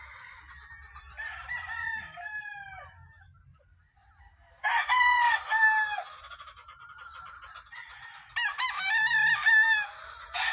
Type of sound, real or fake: real